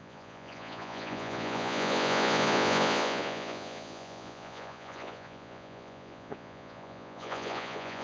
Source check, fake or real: fake